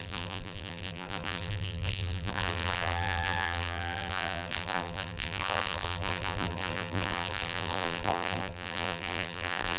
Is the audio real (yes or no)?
no